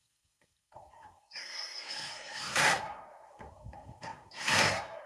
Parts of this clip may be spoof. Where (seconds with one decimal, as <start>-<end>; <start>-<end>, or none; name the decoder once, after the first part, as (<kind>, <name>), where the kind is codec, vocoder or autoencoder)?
0.0-5.1 (codec, SNAC)